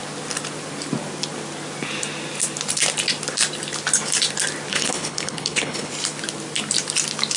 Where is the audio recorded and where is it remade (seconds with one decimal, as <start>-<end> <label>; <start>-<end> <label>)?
0.0-4.7 recorded; 4.7-5.9 remade; 5.9-7.4 recorded